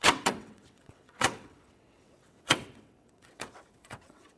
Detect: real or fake fake